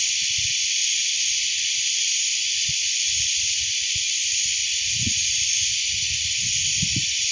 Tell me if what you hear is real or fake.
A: fake